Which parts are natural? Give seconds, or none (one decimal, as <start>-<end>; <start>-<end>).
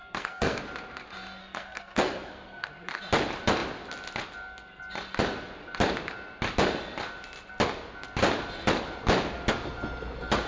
0.6-1.4; 2.7-10.5